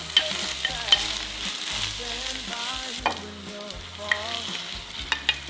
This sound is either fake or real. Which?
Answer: real